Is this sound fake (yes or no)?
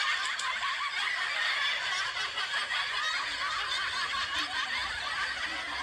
no